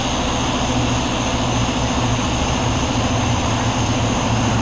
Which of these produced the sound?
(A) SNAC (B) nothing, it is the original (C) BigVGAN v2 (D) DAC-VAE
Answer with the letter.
B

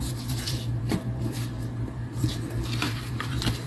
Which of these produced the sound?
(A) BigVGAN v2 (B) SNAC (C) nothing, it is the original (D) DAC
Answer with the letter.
A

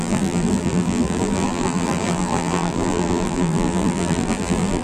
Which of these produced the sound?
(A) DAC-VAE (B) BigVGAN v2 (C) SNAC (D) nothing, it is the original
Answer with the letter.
B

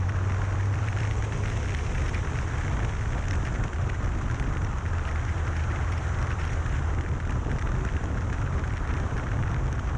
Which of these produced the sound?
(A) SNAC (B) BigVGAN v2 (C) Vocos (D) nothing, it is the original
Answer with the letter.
B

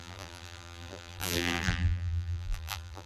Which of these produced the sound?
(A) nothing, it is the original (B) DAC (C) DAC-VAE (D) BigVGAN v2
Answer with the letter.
D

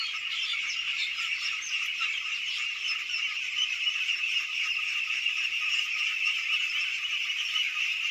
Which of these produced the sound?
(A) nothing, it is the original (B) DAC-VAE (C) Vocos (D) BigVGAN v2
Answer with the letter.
D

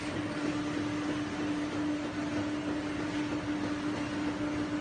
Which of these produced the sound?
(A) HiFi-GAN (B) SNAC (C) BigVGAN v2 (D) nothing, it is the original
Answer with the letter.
D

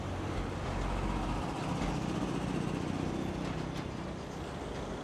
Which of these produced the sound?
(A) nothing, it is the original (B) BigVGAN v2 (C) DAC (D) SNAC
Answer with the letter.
A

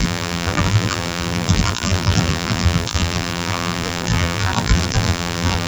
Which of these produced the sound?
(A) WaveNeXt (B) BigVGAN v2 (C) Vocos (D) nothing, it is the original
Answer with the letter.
B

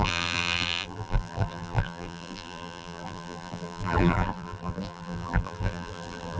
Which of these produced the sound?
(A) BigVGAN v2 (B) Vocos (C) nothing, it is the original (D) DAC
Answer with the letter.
A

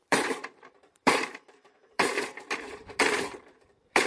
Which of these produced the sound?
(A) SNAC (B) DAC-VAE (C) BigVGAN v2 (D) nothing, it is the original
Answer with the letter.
C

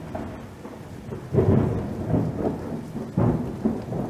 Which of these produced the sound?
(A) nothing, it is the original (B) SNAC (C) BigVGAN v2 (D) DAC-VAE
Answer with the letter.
A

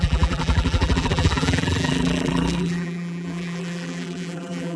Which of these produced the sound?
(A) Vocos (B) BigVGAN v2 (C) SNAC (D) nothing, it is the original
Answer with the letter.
B